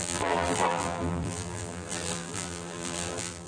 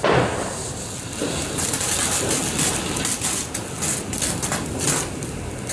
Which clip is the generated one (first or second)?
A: first